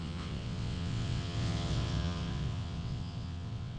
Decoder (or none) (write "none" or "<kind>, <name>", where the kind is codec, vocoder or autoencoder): vocoder, WaveNeXt